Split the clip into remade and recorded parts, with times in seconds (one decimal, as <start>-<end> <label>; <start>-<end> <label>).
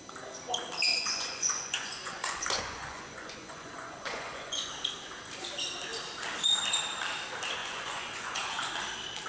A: 0.0-0.9 recorded; 0.9-4.7 remade; 4.7-7.6 recorded; 7.6-8.7 remade; 8.7-9.3 recorded